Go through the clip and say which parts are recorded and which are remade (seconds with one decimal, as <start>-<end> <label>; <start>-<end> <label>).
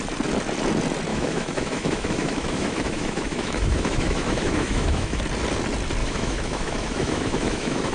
0.0-1.1 recorded; 1.1-5.2 remade; 5.2-6.0 recorded; 6.0-7.9 remade